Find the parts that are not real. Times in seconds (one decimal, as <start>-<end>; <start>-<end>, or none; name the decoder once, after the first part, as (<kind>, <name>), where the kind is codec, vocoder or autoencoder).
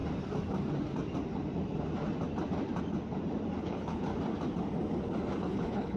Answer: 3.6-4.1 (codec, HILCodec); 5.4-6.0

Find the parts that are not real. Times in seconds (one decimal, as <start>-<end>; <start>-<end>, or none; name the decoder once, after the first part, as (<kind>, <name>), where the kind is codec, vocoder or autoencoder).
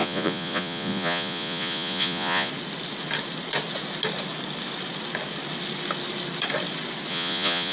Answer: 0.0-2.5 (vocoder, Vocos); 7.1-7.7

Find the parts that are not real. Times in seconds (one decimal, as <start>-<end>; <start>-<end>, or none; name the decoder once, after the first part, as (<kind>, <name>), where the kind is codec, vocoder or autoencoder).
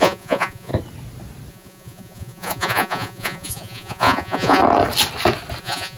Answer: 0.0-0.7 (vocoder, Vocos); 1.5-4.6; 5.6-6.0